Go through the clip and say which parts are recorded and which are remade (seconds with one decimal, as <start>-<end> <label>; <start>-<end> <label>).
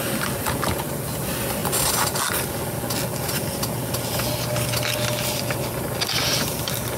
0.0-7.0 recorded